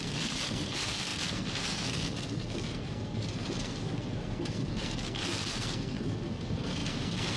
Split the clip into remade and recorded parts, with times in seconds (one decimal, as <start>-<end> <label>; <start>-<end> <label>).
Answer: 0.0-7.4 remade